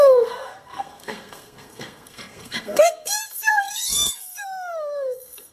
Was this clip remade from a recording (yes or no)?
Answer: yes